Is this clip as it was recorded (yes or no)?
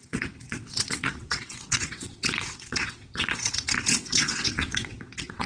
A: no